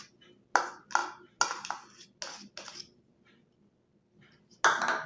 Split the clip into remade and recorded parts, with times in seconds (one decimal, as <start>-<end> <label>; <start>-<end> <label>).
0.0-5.1 recorded